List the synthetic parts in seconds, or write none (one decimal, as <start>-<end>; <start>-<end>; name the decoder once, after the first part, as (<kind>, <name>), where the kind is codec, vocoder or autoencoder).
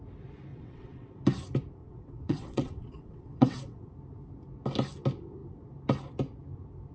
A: 0.5-1.2 (vocoder, WaveNeXt); 1.8-3.9